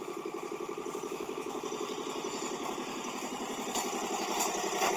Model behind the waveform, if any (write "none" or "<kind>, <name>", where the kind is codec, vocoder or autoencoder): vocoder, BigVGAN v2